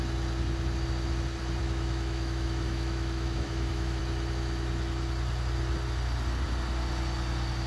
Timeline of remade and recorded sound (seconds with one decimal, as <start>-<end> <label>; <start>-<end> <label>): 0.0-1.6 recorded; 1.6-4.0 remade; 4.0-7.7 recorded